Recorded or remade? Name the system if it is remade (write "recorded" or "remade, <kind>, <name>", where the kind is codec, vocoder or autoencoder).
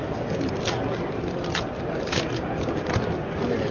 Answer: recorded